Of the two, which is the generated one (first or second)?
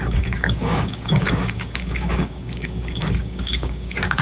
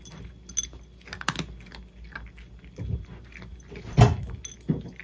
first